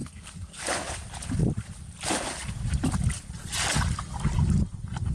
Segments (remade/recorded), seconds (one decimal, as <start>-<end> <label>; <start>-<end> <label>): 0.0-0.6 remade; 0.6-5.1 recorded